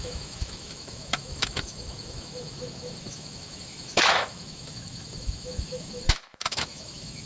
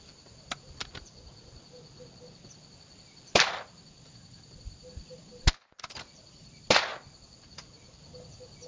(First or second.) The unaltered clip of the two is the second